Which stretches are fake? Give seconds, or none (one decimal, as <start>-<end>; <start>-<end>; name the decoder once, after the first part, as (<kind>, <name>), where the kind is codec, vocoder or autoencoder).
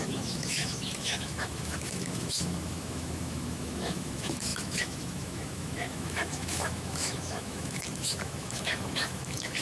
0.0-9.6 (autoencoder, DAC-VAE)